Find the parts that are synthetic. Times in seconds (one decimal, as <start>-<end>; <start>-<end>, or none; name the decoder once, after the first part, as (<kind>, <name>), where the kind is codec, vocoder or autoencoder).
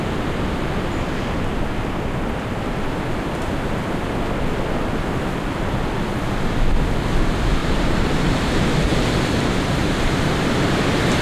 7.6-10.5 (vocoder, BigVGAN v2)